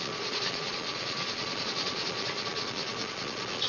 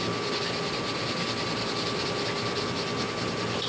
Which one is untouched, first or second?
second